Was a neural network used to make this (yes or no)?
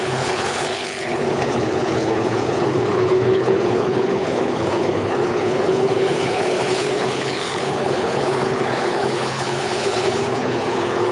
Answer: yes